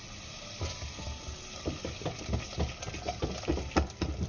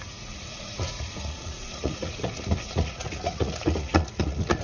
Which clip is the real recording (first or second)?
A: first